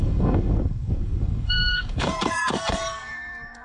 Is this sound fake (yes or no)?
yes